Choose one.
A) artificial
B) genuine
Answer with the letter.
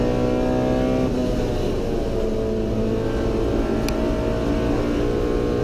B